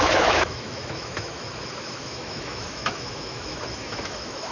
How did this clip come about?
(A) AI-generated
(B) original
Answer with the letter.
A